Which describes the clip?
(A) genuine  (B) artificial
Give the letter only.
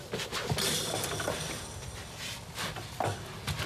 A